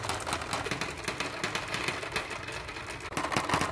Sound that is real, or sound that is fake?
real